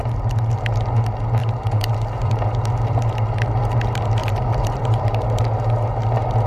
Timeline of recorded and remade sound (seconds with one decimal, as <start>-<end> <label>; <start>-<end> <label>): 0.0-1.4 recorded; 1.4-2.3 remade; 2.3-4.2 recorded; 4.2-5.4 remade; 5.4-6.5 recorded

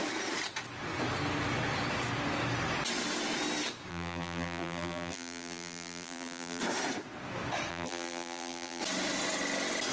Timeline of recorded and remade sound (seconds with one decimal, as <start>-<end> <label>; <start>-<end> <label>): 0.0-3.9 recorded; 3.9-6.6 remade; 6.6-7.7 recorded; 7.7-8.8 remade; 8.8-9.9 recorded

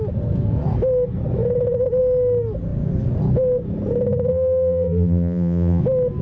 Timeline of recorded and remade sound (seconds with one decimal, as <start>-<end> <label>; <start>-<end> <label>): 0.0-4.3 recorded; 4.3-5.8 remade; 5.8-6.2 recorded

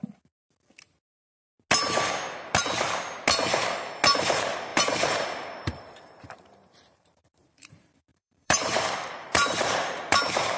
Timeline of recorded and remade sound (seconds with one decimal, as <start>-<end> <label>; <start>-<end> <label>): 0.0-4.7 recorded; 4.7-7.7 remade; 7.7-8.1 recorded; 8.1-10.2 remade; 10.2-10.6 recorded

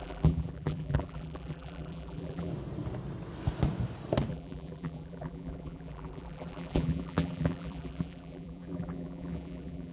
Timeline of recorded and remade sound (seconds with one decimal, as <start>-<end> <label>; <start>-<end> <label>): 0.0-2.5 remade; 2.5-4.3 recorded; 4.3-9.9 remade

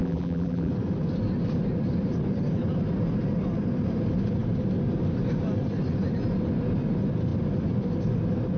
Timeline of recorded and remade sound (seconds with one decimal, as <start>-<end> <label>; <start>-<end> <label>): 0.0-0.7 remade; 0.7-8.6 recorded